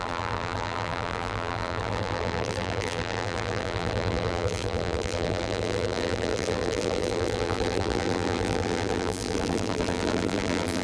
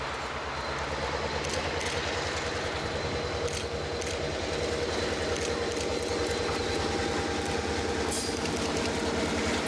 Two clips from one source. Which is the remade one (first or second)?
first